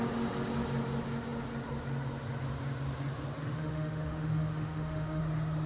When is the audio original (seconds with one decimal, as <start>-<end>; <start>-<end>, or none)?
0.0-3.4; 5.2-5.7